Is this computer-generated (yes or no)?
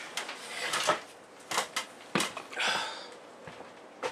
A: no